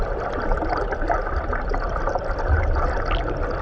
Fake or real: real